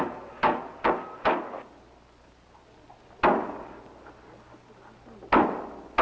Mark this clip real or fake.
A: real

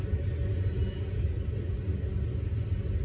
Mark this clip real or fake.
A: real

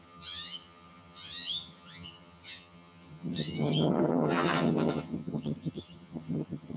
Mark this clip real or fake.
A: fake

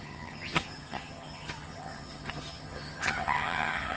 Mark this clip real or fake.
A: fake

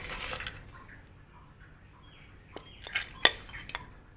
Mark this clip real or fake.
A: real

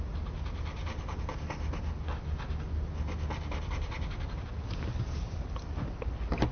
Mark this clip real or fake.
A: real